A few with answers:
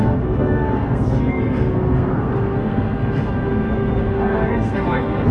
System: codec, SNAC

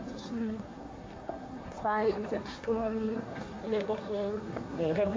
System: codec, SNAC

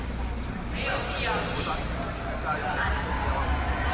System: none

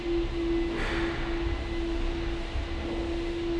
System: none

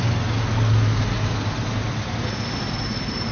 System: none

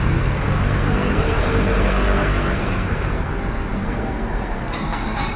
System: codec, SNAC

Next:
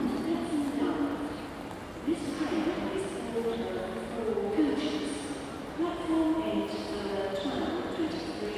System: none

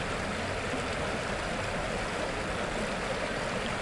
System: none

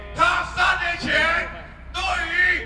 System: none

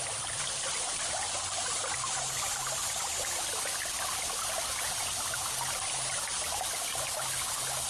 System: none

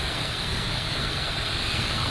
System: codec, SNAC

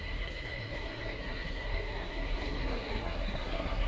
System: codec, SNAC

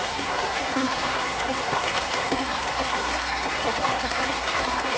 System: codec, SNAC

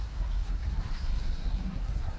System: codec, SNAC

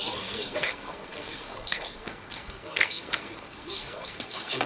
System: codec, SNAC